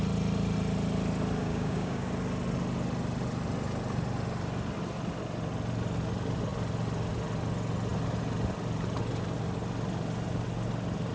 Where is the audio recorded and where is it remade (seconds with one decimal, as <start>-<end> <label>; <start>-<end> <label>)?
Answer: 0.0-1.4 recorded; 1.4-2.1 remade; 2.1-11.1 recorded